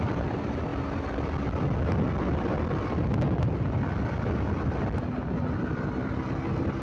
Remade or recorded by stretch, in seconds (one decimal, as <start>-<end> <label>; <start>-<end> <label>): 0.0-6.8 recorded